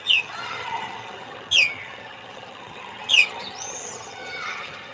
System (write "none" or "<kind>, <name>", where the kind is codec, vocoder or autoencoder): vocoder, HiFi-GAN